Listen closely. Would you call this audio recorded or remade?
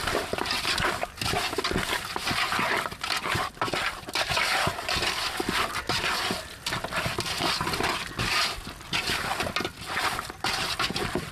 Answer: recorded